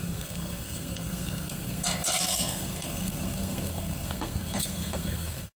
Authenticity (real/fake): fake